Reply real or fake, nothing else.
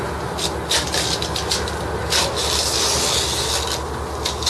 real